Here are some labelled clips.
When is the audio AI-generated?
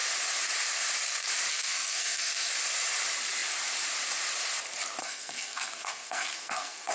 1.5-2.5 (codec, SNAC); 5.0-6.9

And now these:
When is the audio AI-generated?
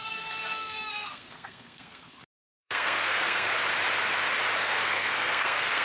0.0-3.5 (codec, SNAC); 4.6-5.8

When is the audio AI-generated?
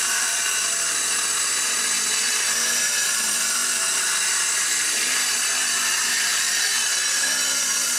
0.0-6.9 (vocoder, BigVGAN v2); 7.5-8.0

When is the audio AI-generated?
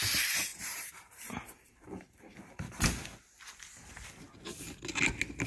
0.5-2.7 (vocoder, BigVGAN v2)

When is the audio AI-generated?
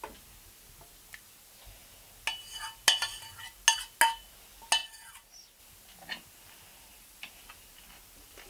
6.9-7.5 (vocoder, BigVGAN v2)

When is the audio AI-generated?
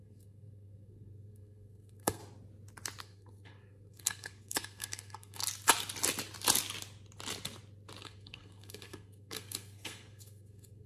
0.0-2.2 (codec, SNAC); 3.0-5.4; 8.0-10.9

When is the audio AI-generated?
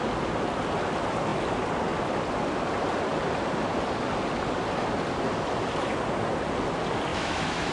7.1-7.7 (autoencoder, DAC-VAE)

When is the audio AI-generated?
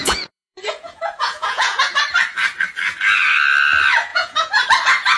0.0-1.9 (vocoder, Vocos); 4.1-4.6